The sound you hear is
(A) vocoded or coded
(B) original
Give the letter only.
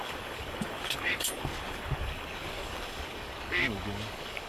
A